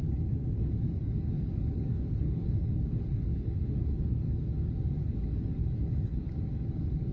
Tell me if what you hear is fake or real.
fake